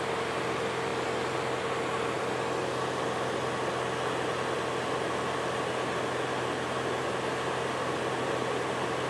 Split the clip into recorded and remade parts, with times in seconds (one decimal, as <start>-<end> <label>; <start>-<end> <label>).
0.0-9.1 recorded